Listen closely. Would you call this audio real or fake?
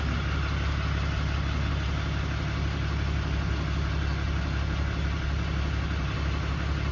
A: real